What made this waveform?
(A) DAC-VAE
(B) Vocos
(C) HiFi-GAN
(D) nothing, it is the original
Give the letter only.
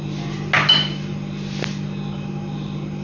D